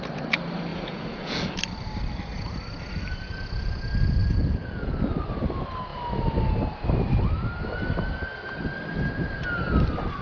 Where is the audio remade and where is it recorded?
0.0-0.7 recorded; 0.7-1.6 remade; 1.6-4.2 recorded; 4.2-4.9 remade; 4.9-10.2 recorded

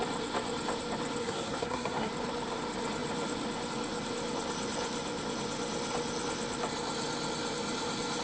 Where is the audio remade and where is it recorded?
0.0-1.2 recorded; 1.2-2.1 remade; 2.1-8.2 recorded

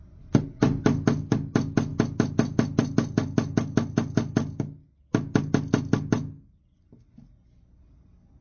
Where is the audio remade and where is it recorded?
0.0-8.4 recorded

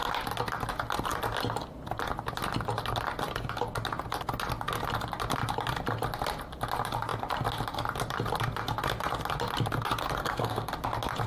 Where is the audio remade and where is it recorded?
0.0-10.2 recorded; 10.2-10.7 remade; 10.7-11.3 recorded

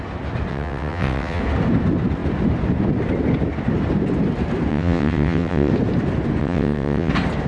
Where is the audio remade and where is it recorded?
0.0-0.5 recorded; 0.5-1.4 remade; 1.4-4.7 recorded; 4.7-5.7 remade; 5.7-6.4 recorded; 6.4-7.1 remade; 7.1-7.5 recorded

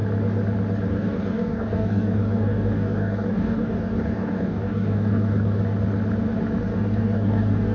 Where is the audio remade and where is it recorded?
0.0-0.9 recorded; 0.9-5.6 remade; 5.6-6.6 recorded; 6.6-7.7 remade

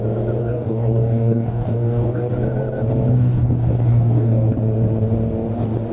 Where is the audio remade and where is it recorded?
0.0-0.4 recorded; 0.4-2.3 remade; 2.3-3.1 recorded; 3.1-4.5 remade; 4.5-5.9 recorded